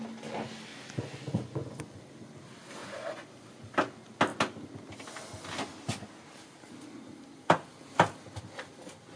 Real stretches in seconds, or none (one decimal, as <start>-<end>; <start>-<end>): 0.0-0.7; 2.0-2.8; 3.3-9.2